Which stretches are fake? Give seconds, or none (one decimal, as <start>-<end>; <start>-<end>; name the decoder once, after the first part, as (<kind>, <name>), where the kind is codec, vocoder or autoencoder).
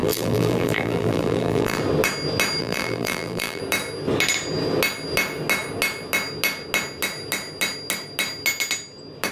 0.0-1.8 (vocoder, BigVGAN v2); 2.6-3.6